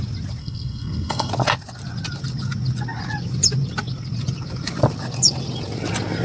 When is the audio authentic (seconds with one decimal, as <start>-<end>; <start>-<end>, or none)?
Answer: 0.0-0.4; 1.3-6.2